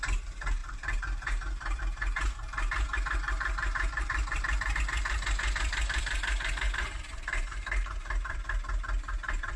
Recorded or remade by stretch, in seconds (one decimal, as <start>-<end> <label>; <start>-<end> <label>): 0.0-9.6 remade